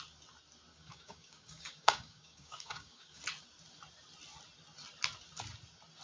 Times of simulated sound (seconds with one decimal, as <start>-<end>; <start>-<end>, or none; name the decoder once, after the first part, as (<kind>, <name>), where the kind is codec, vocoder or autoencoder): 0.7-3.2 (codec, DAC)